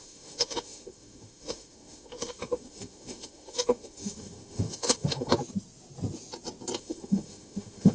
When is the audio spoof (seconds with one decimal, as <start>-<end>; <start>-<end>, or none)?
0.0-5.3; 6.8-7.9